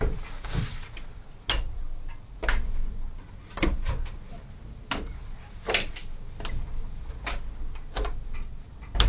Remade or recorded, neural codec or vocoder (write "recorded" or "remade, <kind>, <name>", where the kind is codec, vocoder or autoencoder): recorded